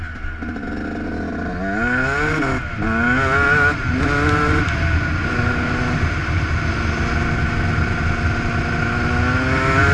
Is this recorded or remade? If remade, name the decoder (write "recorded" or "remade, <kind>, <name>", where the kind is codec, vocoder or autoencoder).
recorded